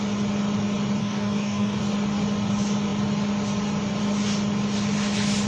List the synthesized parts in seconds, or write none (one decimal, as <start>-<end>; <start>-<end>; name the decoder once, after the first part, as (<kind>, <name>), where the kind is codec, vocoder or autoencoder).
1.0-1.8 (codec, DAC)